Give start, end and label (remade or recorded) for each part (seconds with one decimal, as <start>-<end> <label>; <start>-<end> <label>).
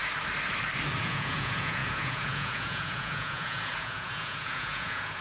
0.0-1.0 recorded; 1.0-5.2 remade